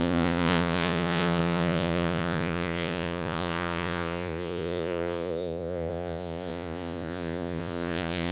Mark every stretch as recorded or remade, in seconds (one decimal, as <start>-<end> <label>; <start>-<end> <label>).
0.0-8.3 remade

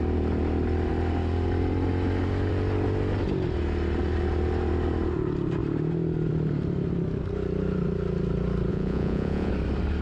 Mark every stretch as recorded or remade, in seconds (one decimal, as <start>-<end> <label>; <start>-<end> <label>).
0.0-8.7 recorded; 8.7-9.5 remade; 9.5-10.0 recorded

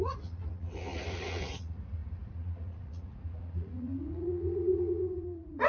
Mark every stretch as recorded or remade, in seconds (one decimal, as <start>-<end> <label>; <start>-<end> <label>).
0.0-5.7 remade

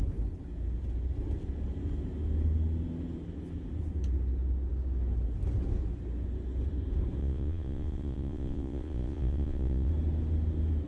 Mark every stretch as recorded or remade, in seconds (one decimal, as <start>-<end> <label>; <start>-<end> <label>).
0.0-7.2 recorded; 7.2-9.9 remade; 9.9-10.9 recorded

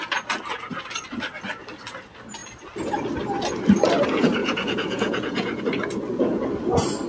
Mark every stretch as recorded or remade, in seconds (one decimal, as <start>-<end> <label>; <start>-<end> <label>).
0.0-4.4 recorded; 4.4-5.6 remade; 5.6-7.1 recorded